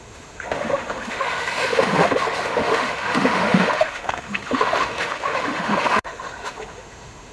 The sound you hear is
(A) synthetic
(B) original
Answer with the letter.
A